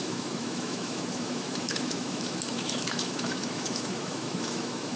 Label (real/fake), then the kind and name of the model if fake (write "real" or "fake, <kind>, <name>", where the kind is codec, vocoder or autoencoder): fake, autoencoder, DAC-VAE